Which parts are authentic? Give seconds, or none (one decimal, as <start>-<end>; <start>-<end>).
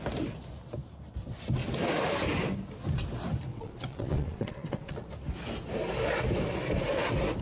0.0-3.5; 5.1-7.4